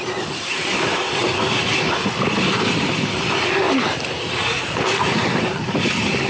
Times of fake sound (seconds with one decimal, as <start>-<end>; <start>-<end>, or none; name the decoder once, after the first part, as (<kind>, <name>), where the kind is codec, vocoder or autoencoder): 0.6-4.4 (vocoder, BigVGAN v2); 4.9-5.8